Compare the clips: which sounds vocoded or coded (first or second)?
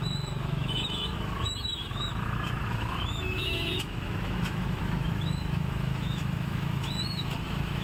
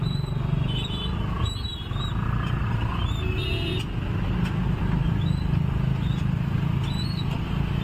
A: first